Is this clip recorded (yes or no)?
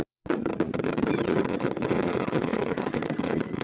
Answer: no